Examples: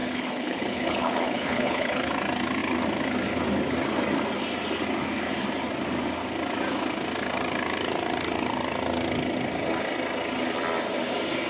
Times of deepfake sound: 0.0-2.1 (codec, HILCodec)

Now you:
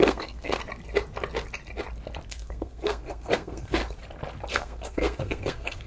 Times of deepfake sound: 0.0-0.6 (codec, SNAC); 2.3-3.8; 4.5-5.9

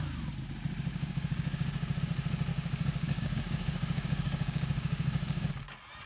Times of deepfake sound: 0.9-2.0 (codec, DAC); 2.5-5.5

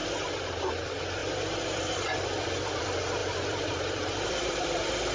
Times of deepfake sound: 0.0-0.7 (vocoder, BigVGAN v2); 1.2-2.8; 3.2-5.1

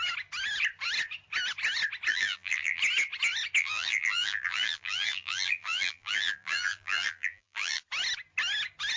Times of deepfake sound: 2.1-2.8 (vocoder, BigVGAN v2); 3.6-7.8

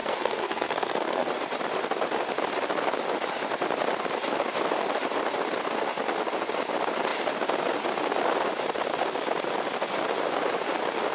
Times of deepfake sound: 0.0-1.3 (codec, SNAC)